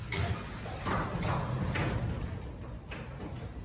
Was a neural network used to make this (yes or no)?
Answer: no